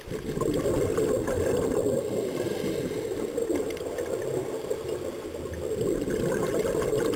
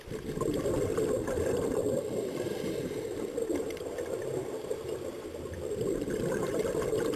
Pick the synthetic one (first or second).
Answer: second